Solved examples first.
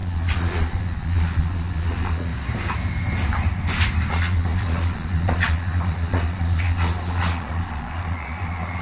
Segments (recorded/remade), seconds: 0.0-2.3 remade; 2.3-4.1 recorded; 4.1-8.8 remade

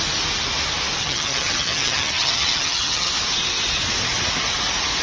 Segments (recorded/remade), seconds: 0.0-1.0 recorded; 1.0-3.1 remade; 3.1-5.0 recorded

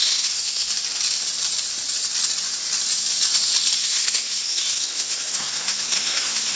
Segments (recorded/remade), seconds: 0.0-0.7 remade; 0.7-3.8 recorded; 3.8-6.6 remade